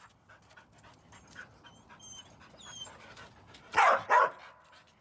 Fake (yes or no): no